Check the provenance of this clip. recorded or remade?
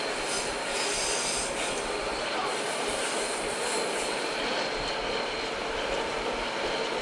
recorded